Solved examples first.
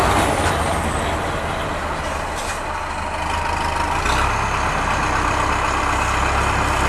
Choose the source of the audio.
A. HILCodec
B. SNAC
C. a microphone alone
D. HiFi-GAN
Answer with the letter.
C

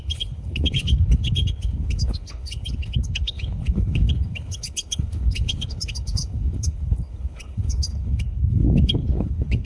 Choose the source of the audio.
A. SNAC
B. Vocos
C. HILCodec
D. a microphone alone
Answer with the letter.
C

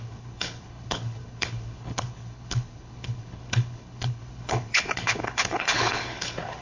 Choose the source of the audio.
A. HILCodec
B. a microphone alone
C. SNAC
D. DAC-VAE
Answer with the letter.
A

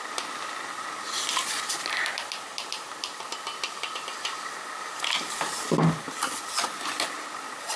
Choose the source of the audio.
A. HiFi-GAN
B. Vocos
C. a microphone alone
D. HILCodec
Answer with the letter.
C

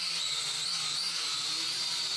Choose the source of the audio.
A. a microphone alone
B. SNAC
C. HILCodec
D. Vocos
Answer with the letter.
A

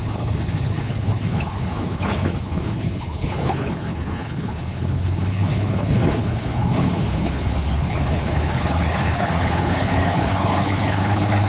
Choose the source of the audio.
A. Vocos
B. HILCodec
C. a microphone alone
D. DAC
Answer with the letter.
B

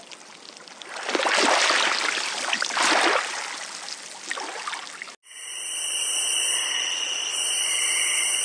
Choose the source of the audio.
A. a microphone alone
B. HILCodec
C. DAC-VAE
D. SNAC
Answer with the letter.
A